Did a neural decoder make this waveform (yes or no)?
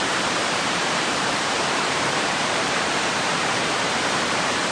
yes